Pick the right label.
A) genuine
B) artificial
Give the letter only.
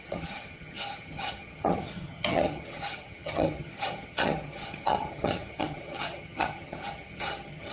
B